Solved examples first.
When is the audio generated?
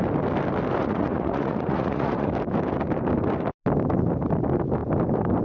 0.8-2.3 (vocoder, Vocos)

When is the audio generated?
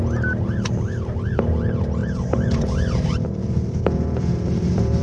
2.0-5.0 (vocoder, BigVGAN v2)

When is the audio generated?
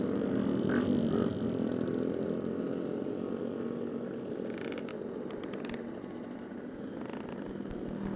4.9-6.6 (vocoder, BigVGAN v2)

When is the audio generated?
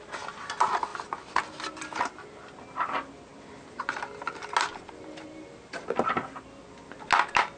none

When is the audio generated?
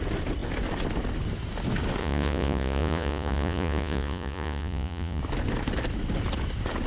2.0-5.2 (vocoder, Vocos)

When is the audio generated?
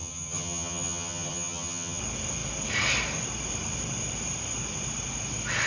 0.0-2.0 (vocoder, HiFi-GAN)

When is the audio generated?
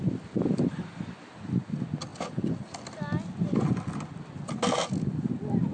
none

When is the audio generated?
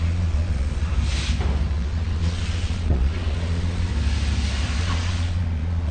0.0-0.9 (vocoder, Vocos); 1.7-3.9; 4.8-5.9